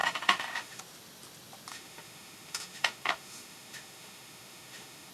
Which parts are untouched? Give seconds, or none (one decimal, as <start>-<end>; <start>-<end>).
0.8-1.7